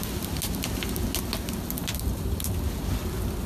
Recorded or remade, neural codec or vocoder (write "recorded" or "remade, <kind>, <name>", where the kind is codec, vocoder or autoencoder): recorded